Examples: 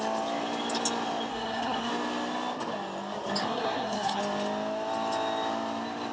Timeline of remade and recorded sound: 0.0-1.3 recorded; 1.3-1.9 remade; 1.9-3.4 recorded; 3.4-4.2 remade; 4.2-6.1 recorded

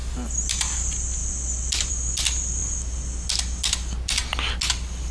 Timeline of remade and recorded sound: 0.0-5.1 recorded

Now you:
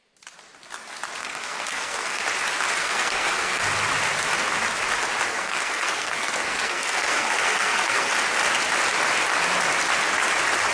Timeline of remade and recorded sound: 0.0-1.2 recorded; 1.2-2.2 remade; 2.2-2.8 recorded; 2.8-3.6 remade; 3.6-5.3 recorded; 5.3-8.1 remade; 8.1-10.7 recorded

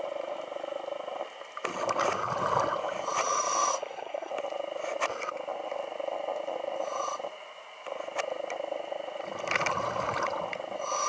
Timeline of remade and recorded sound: 0.0-3.7 recorded; 3.7-4.3 remade; 4.3-11.1 recorded

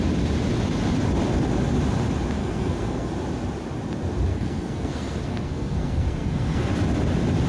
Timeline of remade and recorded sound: 0.0-2.4 recorded; 2.4-3.1 remade; 3.1-4.3 recorded; 4.3-6.7 remade; 6.7-7.5 recorded